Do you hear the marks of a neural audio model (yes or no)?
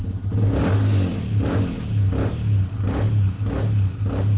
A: no